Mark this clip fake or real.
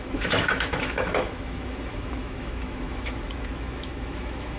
fake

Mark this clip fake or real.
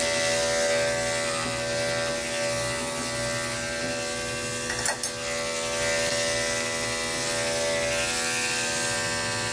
real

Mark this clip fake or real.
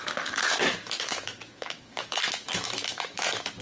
fake